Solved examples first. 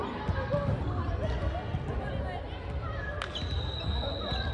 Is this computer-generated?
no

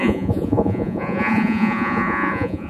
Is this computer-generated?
yes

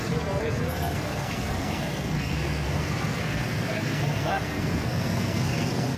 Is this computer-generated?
yes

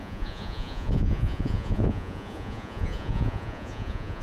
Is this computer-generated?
yes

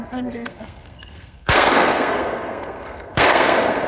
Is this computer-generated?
yes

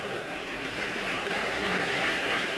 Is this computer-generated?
yes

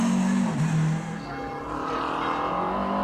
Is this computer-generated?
no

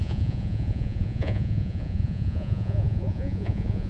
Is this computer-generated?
yes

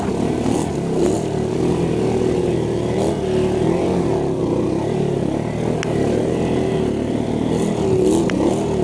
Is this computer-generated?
no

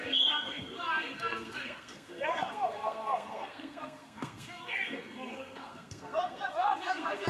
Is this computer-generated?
yes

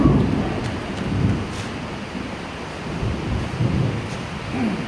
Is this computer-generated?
no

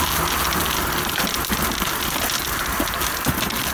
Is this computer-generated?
no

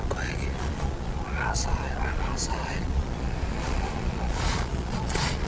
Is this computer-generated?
yes